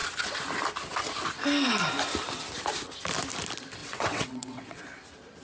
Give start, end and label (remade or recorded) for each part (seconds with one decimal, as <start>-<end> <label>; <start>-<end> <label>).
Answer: 0.0-3.8 recorded; 3.8-4.8 remade; 4.8-5.4 recorded